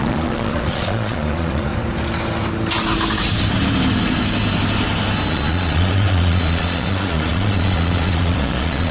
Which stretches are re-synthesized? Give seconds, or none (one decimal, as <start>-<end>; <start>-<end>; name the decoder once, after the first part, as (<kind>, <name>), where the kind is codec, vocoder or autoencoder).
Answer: 0.0-1.7 (vocoder, Vocos); 5.3-8.9